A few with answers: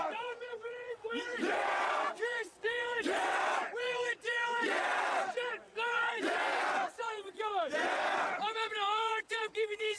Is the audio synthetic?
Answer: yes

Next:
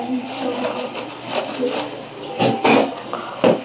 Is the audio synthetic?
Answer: no